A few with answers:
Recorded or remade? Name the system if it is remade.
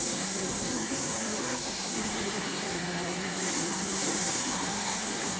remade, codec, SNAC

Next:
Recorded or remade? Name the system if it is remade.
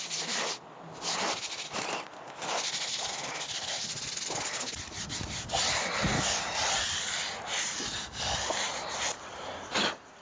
recorded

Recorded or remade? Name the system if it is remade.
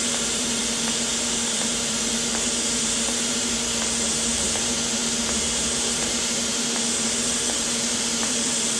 remade, vocoder, BigVGAN v2